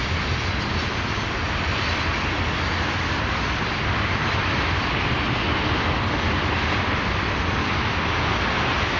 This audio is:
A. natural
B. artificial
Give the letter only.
A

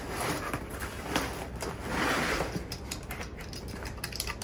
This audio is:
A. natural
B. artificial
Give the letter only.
B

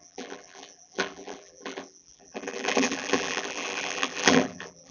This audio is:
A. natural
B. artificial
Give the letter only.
B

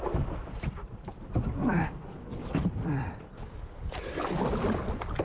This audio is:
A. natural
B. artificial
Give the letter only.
B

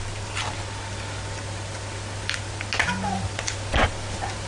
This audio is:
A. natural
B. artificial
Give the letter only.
A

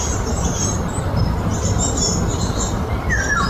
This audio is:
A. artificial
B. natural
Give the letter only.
A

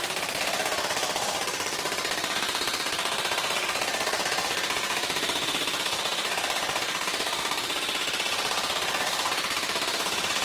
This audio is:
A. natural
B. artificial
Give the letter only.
B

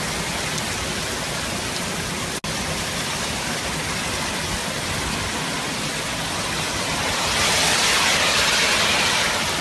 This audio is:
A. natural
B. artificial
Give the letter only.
A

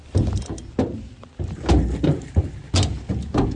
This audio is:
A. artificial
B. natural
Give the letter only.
B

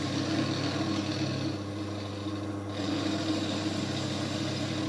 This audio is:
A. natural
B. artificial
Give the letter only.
A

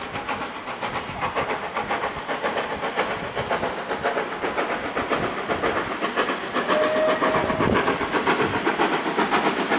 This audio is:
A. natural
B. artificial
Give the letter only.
A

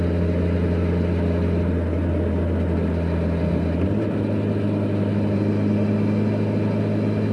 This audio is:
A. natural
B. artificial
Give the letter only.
A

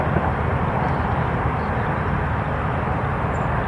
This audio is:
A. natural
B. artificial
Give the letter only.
B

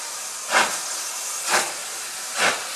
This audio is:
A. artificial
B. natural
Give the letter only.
B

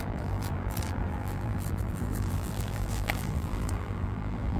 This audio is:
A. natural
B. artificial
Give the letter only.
B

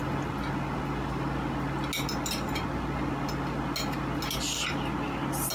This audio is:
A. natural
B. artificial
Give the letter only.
A